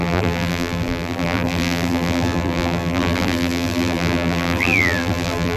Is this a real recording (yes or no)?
no